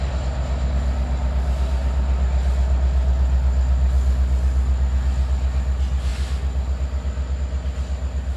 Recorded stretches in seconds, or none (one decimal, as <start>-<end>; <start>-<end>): 0.0-8.4